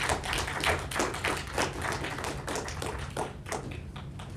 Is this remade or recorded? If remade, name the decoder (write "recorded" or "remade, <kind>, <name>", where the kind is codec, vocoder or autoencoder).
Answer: recorded